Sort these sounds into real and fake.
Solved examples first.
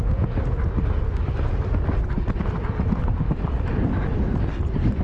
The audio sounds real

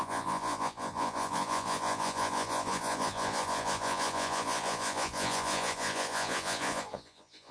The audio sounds fake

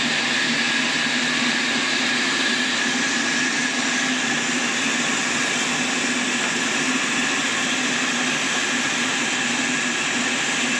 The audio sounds real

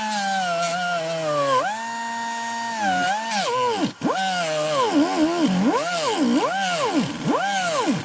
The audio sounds real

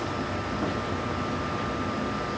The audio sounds real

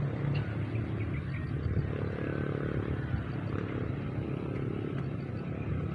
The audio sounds real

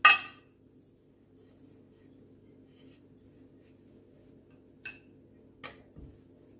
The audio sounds real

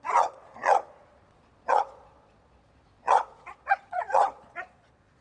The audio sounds fake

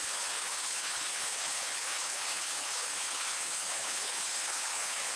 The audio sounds fake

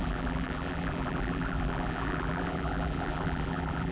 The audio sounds fake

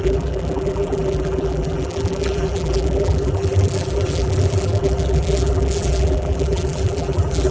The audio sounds fake